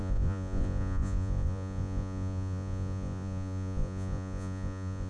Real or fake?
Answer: fake